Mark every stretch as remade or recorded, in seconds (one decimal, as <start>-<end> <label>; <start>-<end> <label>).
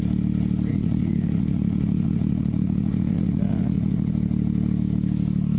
0.0-0.7 recorded; 0.7-4.1 remade; 4.1-5.6 recorded